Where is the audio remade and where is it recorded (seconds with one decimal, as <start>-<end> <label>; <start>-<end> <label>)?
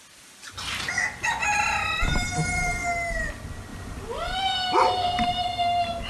0.0-6.1 recorded